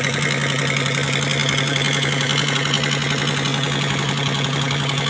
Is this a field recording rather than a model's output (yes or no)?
yes